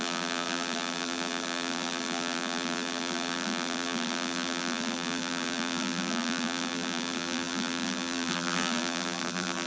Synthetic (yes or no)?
yes